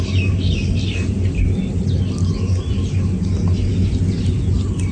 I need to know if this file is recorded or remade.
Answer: recorded